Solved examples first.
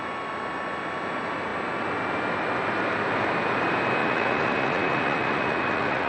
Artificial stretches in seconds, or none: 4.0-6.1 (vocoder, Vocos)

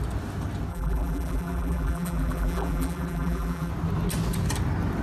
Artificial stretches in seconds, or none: 0.7-3.7 (vocoder, BigVGAN v2)

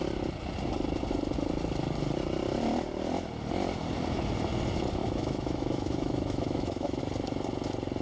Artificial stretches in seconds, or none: 5.0-7.0 (autoencoder, DAC-VAE)